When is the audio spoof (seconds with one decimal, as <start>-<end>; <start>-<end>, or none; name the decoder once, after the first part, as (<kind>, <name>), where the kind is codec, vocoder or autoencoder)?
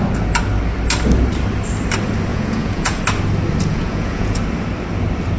2.3-3.0 (vocoder, Vocos); 3.7-4.4